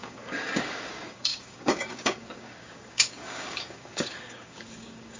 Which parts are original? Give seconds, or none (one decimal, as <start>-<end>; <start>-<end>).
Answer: none